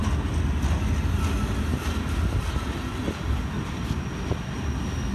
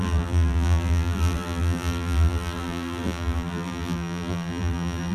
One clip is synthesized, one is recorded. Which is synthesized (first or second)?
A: second